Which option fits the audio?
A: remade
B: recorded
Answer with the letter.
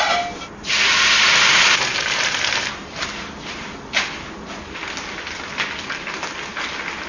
B